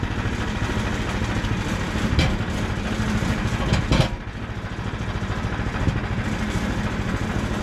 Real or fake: real